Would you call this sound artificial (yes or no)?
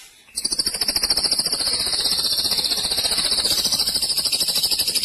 no